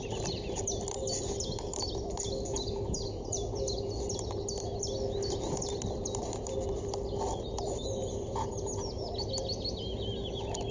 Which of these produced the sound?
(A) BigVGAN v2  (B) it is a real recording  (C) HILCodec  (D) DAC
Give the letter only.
B